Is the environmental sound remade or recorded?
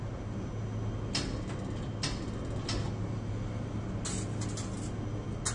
recorded